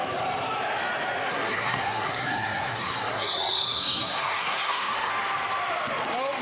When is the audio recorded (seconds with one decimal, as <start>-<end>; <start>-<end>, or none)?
0.0-1.3; 5.1-6.4